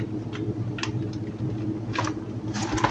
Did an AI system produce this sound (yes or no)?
no